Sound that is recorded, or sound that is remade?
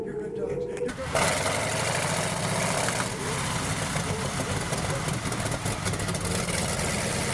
recorded